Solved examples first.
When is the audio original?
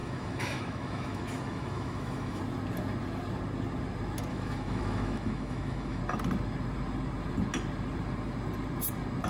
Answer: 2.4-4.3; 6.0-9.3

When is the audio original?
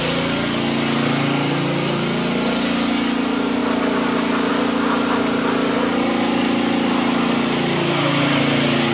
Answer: 0.0-8.9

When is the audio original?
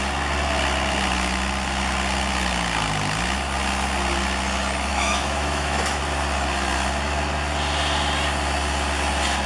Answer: 0.0-4.9; 6.0-9.5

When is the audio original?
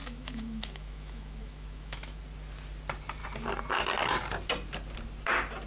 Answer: 2.2-5.7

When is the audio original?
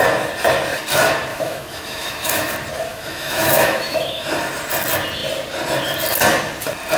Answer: 0.0-1.3; 2.5-2.9; 4.2-7.0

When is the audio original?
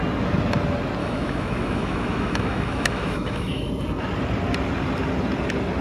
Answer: 0.0-1.0; 3.7-5.8